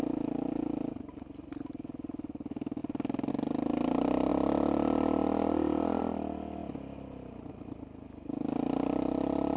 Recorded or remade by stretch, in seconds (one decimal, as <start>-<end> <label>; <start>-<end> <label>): 0.0-9.6 recorded